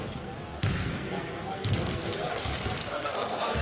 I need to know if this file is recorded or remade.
remade